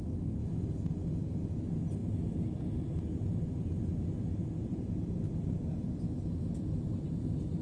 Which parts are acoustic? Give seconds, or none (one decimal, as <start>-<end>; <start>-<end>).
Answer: 0.0-7.6